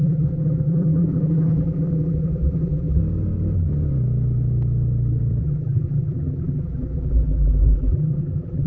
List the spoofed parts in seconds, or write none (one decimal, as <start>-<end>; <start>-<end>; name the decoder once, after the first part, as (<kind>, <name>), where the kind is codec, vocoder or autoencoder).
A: 0.0-3.0 (vocoder, BigVGAN v2); 5.4-8.7